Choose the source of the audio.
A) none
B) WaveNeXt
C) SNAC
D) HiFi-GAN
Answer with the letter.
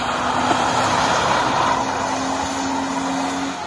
A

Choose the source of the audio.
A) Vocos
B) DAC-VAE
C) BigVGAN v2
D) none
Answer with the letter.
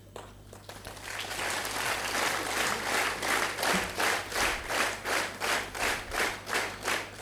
D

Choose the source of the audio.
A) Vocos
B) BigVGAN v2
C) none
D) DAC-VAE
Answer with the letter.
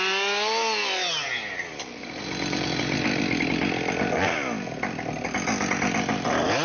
C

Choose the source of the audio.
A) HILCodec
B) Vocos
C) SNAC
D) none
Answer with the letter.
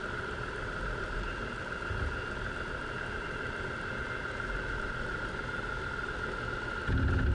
D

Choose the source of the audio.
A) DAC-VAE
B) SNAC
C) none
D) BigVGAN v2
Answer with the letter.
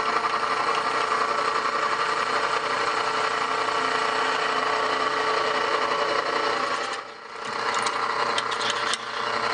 C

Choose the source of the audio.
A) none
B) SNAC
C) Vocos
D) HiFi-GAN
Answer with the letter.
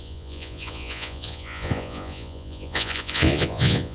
C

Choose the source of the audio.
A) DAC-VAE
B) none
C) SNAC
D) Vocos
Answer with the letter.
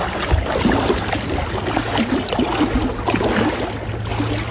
B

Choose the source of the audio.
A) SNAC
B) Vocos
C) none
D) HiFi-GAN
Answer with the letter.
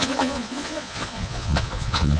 B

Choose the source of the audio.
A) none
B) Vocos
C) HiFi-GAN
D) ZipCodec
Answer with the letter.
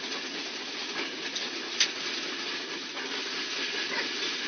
A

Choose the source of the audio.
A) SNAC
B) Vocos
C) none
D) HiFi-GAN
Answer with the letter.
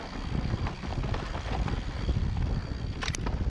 C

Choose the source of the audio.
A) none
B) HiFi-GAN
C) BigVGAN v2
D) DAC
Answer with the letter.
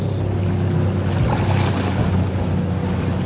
A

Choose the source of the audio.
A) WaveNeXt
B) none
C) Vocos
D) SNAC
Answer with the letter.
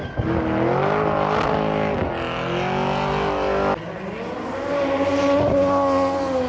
B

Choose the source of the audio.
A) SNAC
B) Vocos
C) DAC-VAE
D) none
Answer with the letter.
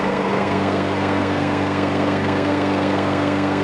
A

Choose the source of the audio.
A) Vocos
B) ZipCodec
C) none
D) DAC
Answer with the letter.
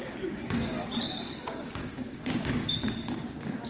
D